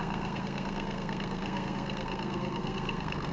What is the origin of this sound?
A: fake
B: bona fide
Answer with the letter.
A